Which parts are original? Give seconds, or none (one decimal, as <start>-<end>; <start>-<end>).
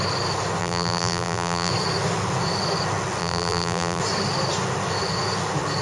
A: 0.0-0.6; 1.7-3.2; 4.0-5.8